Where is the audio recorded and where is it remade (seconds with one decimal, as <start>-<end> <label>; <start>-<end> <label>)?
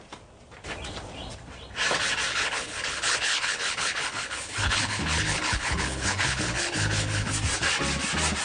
0.0-2.3 recorded; 2.3-7.3 remade; 7.3-8.4 recorded